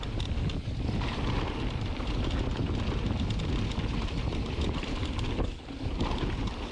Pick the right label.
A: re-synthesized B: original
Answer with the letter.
B